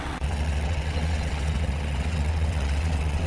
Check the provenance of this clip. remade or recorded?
remade